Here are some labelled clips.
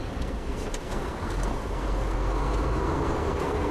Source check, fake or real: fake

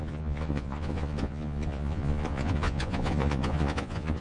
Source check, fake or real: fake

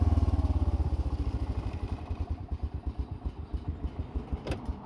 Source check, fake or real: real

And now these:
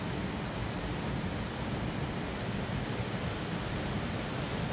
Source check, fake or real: real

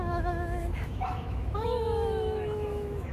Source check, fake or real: fake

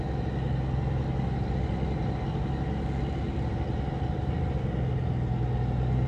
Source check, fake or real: real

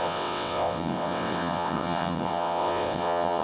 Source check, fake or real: fake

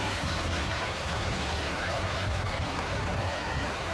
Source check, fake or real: fake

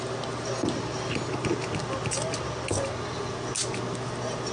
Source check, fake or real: real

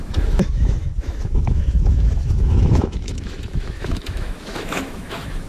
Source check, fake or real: fake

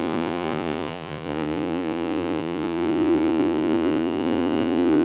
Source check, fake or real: fake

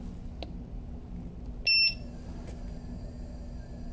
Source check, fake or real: real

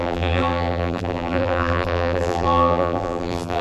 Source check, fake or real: fake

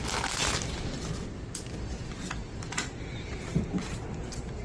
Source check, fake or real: real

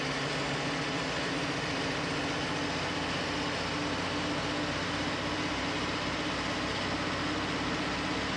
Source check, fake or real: real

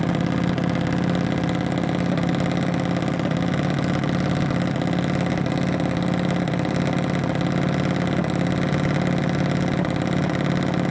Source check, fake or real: real